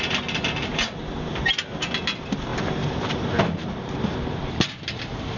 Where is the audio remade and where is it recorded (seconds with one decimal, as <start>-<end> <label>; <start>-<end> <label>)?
0.0-5.4 recorded